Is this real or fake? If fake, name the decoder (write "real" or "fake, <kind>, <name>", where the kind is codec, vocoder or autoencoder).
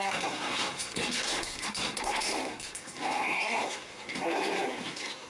fake, codec, SNAC